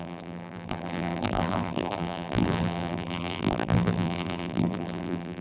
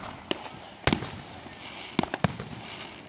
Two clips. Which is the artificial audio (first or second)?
first